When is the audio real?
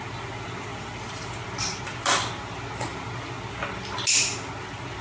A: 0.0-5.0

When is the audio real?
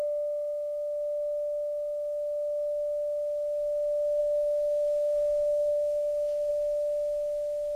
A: 0.0-4.2; 6.5-7.8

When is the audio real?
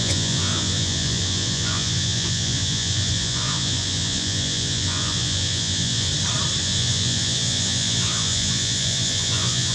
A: 6.1-6.6